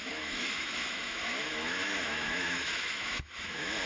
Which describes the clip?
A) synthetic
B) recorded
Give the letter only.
A